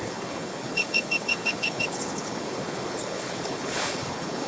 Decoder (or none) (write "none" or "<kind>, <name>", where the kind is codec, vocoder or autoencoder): codec, HILCodec